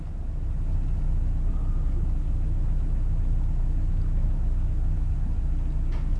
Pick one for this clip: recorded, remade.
recorded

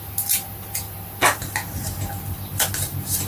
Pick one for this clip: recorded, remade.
recorded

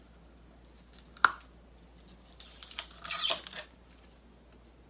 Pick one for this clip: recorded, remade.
recorded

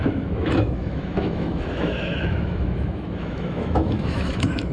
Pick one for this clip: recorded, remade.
remade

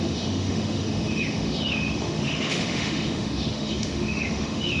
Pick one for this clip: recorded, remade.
remade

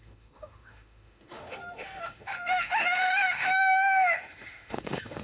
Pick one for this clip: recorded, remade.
remade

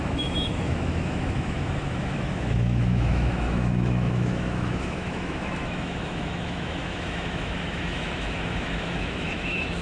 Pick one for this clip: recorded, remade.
remade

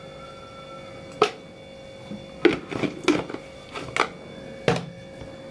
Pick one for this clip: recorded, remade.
recorded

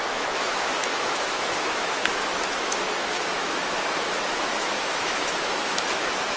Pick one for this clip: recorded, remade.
remade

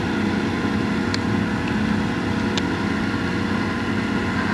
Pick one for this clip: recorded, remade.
recorded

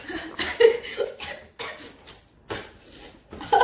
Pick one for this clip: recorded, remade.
recorded